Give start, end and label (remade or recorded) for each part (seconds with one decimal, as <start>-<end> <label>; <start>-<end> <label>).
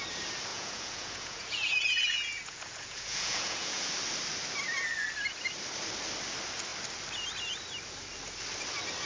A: 0.0-0.5 recorded; 0.5-3.9 remade; 3.9-9.1 recorded